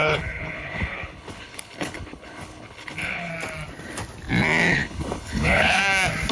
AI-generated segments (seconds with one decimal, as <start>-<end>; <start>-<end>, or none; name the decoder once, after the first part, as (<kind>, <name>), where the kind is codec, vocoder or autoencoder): 0.0-3.3 (codec, HILCodec); 4.7-5.8